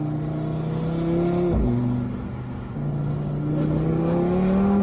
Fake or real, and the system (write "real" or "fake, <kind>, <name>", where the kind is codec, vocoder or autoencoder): real